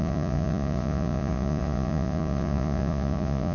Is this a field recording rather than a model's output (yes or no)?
no